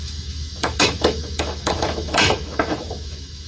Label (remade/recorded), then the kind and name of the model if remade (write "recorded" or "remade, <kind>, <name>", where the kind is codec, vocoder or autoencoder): remade, autoencoder, DAC-VAE